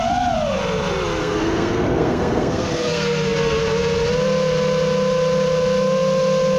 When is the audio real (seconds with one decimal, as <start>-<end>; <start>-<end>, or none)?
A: 0.0-1.2; 3.6-6.6